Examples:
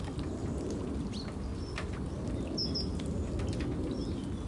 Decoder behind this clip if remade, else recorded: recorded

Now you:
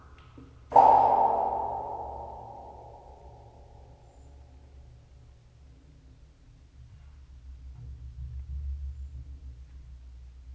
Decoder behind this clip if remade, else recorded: recorded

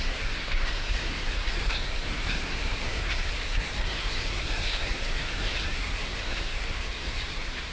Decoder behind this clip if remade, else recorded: remade, codec, SNAC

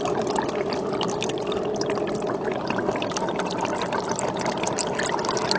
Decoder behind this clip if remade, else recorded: recorded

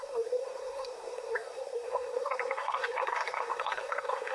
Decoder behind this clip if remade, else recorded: remade, codec, SNAC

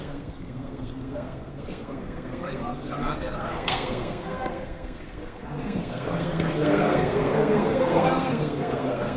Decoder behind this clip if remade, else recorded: remade, codec, SNAC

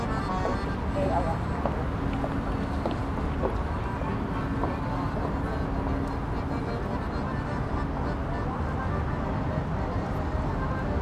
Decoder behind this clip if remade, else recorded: recorded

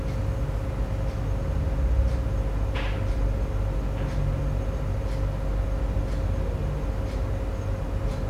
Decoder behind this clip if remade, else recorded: recorded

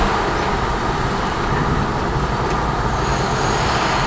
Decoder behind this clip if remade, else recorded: recorded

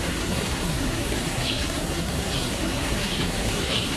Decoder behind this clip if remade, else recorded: remade, codec, SNAC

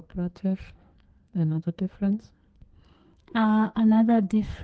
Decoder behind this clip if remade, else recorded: remade, codec, SNAC